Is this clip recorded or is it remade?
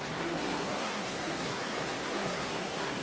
remade